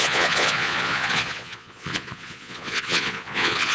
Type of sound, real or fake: fake